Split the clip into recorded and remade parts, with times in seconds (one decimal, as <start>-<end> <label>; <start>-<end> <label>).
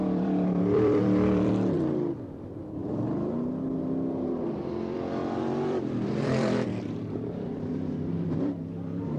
0.0-2.8 remade; 2.8-3.8 recorded; 3.8-9.2 remade